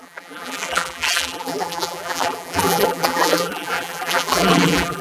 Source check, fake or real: fake